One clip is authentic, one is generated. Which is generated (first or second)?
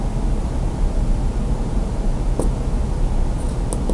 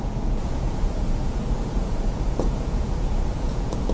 second